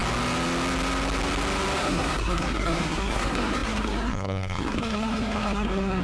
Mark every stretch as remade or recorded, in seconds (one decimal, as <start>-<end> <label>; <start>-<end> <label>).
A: 0.0-1.8 recorded; 1.8-6.0 remade